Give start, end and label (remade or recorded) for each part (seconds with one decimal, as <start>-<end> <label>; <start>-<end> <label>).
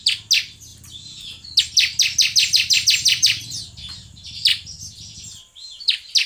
0.0-2.4 recorded; 2.4-3.4 remade; 3.4-6.3 recorded